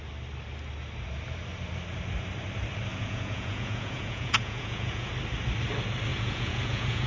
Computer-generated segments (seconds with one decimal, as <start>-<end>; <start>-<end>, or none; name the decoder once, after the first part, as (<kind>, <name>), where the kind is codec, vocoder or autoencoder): 2.9-5.1 (vocoder, Vocos); 6.1-7.1